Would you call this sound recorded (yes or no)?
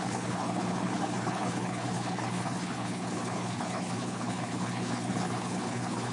no